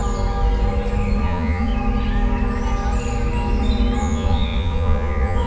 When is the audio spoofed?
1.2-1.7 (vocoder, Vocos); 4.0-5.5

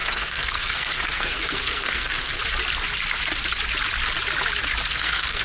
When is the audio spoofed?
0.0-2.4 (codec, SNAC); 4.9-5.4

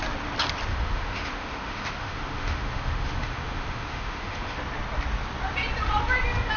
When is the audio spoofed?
0.7-4.6 (autoencoder, DAC-VAE)

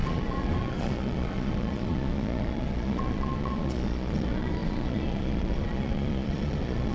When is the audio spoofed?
0.0-6.9 (vocoder, Vocos)